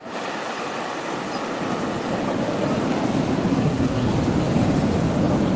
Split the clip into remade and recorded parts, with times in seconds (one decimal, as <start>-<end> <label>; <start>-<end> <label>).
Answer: 0.0-3.5 recorded; 3.5-4.1 remade; 4.1-5.6 recorded